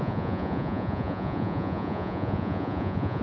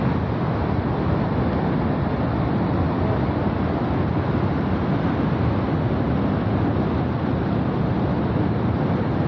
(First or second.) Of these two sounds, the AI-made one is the first